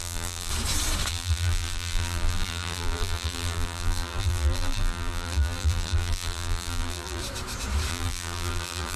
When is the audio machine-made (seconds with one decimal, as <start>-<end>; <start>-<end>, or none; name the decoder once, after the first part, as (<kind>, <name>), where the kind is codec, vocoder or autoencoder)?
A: 0.0-0.5 (vocoder, BigVGAN v2); 1.1-7.2; 7.9-9.0